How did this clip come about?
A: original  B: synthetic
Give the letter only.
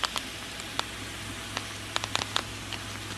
A